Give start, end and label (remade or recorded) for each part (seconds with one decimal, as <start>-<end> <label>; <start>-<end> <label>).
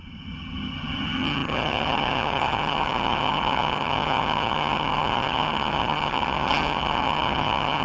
0.0-7.8 remade